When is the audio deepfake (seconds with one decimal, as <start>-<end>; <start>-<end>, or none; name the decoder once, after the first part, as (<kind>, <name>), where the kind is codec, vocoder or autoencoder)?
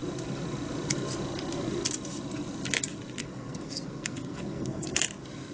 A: 3.2-5.0 (codec, SNAC)